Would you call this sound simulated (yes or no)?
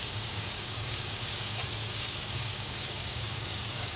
yes